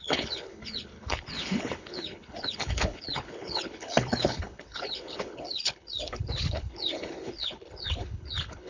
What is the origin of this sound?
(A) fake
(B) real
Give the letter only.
A